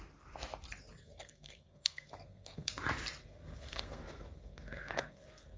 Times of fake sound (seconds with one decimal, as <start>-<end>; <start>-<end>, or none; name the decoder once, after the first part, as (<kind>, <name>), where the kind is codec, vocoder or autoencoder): 1.0-2.7 (codec, SNAC); 3.2-5.6